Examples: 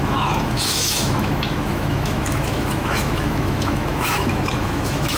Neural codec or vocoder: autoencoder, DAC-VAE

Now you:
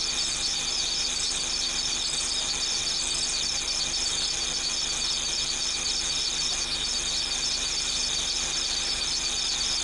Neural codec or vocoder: none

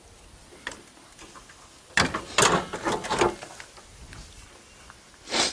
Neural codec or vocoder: none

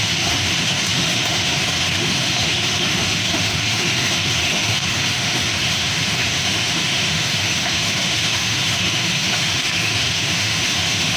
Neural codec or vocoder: autoencoder, DAC-VAE